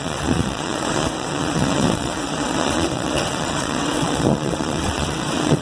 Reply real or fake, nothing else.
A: fake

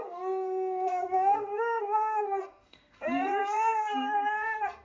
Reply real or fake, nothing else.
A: fake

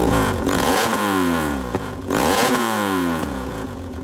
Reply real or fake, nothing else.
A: fake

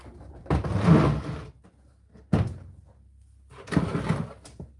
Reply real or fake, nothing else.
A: real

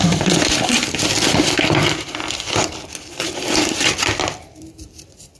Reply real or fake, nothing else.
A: fake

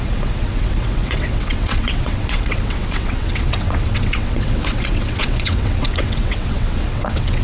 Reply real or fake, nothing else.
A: fake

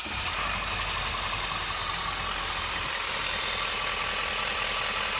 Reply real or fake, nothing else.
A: real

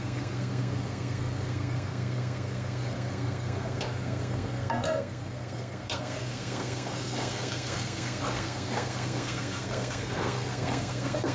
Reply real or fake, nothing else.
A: fake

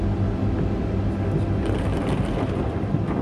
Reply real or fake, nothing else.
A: real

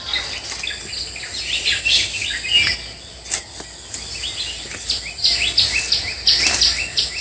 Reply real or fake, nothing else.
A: real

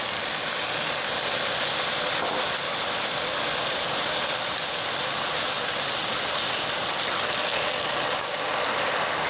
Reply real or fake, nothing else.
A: real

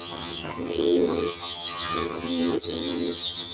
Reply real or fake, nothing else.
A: fake